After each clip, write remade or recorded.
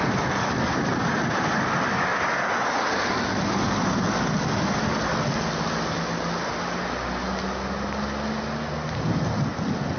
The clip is recorded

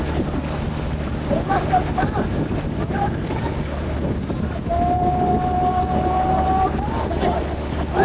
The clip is recorded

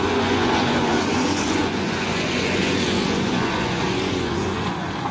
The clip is remade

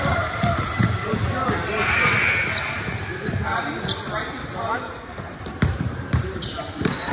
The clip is remade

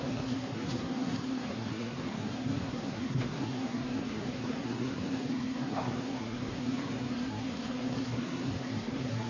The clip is remade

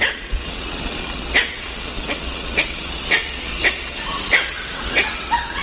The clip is remade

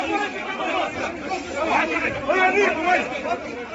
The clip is recorded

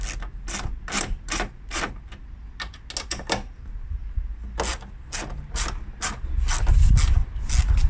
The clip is recorded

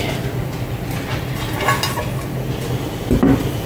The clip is recorded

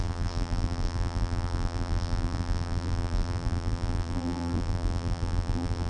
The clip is remade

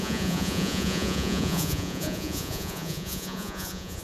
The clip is remade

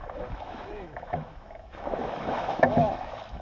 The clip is remade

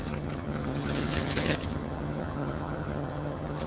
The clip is remade